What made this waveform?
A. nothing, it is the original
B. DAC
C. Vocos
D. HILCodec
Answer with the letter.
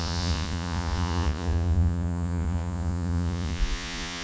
C